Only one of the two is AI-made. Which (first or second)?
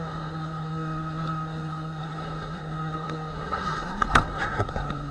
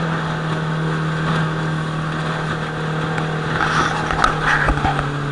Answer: first